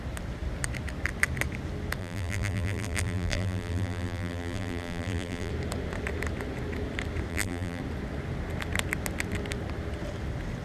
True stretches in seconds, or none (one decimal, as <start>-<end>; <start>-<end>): 0.0-2.0; 5.5-7.3; 7.8-10.6